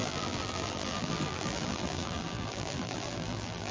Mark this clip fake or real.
fake